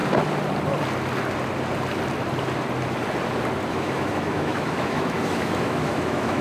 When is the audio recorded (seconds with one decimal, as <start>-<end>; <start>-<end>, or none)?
0.0-3.7